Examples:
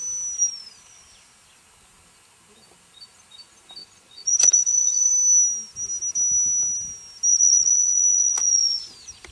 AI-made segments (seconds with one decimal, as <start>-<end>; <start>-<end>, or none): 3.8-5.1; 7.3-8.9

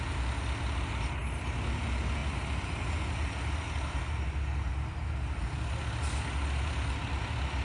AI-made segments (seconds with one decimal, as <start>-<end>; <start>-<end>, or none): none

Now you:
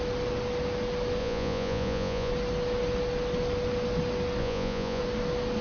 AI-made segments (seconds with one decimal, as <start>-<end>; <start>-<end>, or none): 1.2-2.3; 4.4-5.0

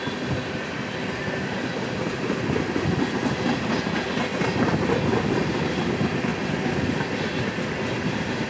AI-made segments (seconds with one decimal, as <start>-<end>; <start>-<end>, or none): none

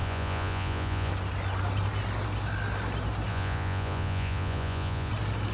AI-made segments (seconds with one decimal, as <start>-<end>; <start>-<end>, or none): 0.0-1.1; 3.3-5.1